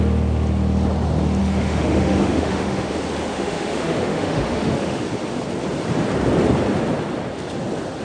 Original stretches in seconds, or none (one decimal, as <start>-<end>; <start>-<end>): 0.0-1.4; 2.9-3.3; 5.0-8.0